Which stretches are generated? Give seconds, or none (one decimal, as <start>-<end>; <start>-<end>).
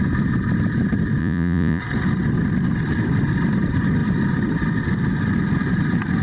1.2-1.8